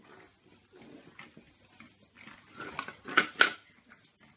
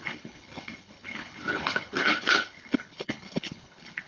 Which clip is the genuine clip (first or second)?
first